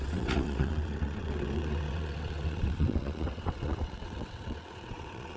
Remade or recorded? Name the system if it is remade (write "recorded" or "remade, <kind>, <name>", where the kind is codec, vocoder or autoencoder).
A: remade, vocoder, WaveNeXt